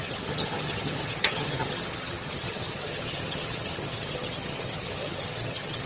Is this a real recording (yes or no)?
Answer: no